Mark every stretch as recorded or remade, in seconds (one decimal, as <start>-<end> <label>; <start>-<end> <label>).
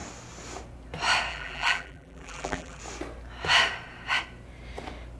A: 0.0-1.3 recorded; 1.3-2.8 remade; 2.8-5.2 recorded